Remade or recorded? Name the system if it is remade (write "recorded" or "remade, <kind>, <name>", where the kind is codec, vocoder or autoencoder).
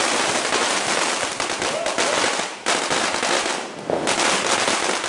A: recorded